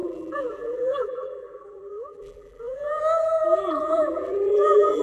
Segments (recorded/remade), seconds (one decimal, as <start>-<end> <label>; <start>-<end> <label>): 0.0-3.0 remade; 3.0-3.5 recorded; 3.5-5.0 remade